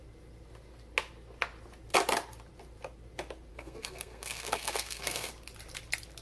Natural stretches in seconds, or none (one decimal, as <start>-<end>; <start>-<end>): 0.0-3.5; 5.3-6.2